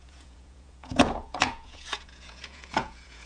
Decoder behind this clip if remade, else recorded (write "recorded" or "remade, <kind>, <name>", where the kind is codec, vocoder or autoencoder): remade, vocoder, Vocos